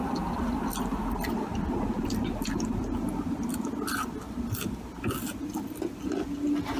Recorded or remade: recorded